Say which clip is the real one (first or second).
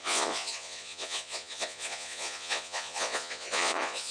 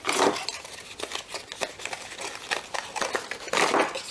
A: second